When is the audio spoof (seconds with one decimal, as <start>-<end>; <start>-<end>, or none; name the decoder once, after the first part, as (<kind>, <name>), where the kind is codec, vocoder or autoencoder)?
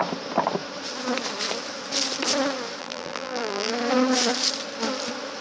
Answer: 2.8-3.7 (vocoder, BigVGAN v2)